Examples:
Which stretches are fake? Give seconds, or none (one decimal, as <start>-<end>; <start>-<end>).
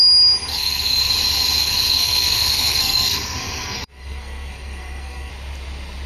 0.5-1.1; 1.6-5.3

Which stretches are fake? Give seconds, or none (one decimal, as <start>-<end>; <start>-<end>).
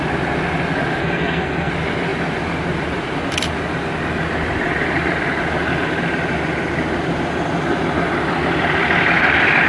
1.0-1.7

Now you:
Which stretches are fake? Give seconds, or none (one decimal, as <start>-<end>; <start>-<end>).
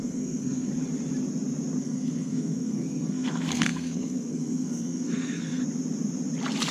0.0-0.7; 1.8-5.6